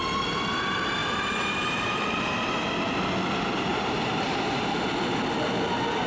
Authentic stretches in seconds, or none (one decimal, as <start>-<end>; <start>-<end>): 0.0-1.0; 2.3-3.7; 4.9-6.1